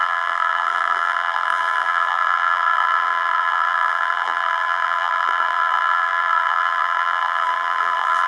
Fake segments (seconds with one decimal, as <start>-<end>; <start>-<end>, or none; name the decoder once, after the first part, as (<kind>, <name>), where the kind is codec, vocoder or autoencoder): 0.0-8.3 (vocoder, BigVGAN v2)